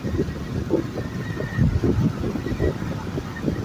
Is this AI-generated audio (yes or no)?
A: no